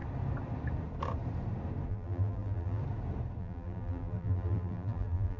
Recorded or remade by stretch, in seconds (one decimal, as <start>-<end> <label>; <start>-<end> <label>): 0.0-1.9 recorded; 1.9-2.8 remade; 2.8-3.4 recorded; 3.4-5.4 remade